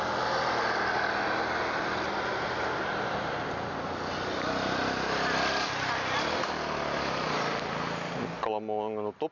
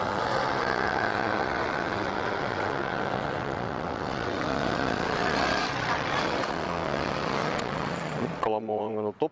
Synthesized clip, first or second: second